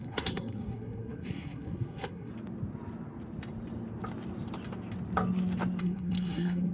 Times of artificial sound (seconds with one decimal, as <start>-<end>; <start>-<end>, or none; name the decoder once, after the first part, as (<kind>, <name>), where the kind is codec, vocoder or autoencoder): 0.0-2.3 (codec, SNAC); 5.8-6.7

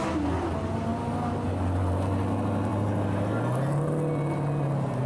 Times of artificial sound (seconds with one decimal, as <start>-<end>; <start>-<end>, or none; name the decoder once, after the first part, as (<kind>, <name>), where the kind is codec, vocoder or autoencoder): none

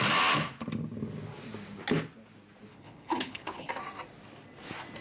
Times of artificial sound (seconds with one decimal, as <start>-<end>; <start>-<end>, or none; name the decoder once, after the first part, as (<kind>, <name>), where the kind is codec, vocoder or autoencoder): 2.7-3.7 (codec, HILCodec)

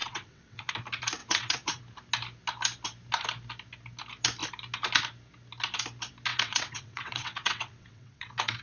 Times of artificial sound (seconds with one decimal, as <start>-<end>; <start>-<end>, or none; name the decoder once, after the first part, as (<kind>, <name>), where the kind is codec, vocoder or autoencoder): 0.0-0.7 (vocoder, WaveNeXt); 1.2-1.8; 6.3-8.6

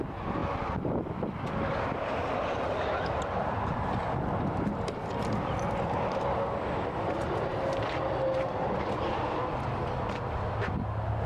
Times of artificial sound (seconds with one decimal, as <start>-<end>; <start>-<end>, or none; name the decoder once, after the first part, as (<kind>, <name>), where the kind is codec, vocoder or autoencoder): 0.0-11.3 (vocoder, BigVGAN v2)

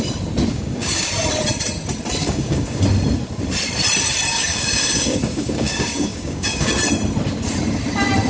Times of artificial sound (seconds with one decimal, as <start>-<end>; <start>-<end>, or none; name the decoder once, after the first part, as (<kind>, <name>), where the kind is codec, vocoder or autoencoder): 0.5-1.1 (codec, DAC); 2.2-2.8; 4.3-6.7